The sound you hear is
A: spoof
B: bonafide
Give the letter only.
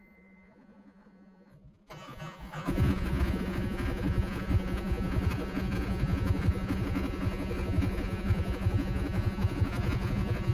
A